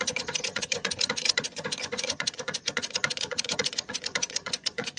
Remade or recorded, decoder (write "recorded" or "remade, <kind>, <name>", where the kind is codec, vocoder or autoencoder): remade, vocoder, Vocos